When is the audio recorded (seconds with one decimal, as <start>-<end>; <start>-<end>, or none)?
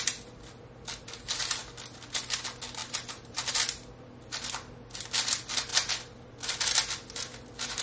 0.0-2.8; 3.5-7.8